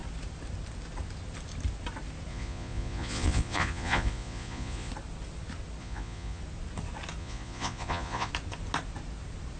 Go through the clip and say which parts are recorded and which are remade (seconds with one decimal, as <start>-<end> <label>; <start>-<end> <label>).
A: 0.0-2.3 recorded; 2.3-4.9 remade; 4.9-5.8 recorded; 5.8-6.4 remade; 6.4-7.2 recorded; 7.2-8.3 remade; 8.3-9.6 recorded